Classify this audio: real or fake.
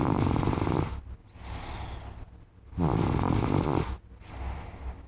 real